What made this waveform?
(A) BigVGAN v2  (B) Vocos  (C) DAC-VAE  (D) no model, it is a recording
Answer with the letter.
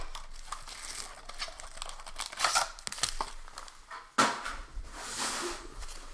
D